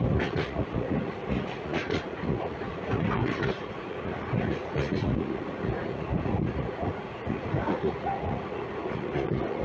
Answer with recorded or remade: remade